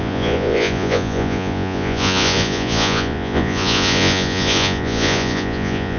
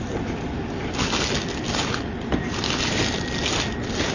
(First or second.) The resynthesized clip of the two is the first